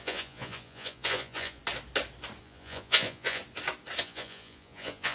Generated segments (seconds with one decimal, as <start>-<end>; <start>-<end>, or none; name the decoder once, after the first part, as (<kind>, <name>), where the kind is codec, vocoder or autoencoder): 0.0-1.6 (vocoder, Vocos); 2.4-3.4; 4.0-5.1